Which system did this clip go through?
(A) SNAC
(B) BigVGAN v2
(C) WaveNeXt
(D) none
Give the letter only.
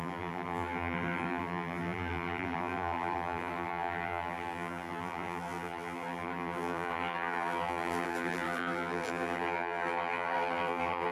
B